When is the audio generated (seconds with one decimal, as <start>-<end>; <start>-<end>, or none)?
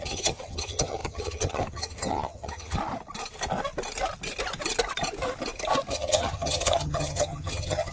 0.0-2.8; 5.9-7.9